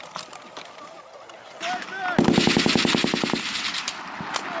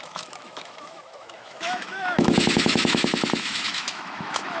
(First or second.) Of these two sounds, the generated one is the second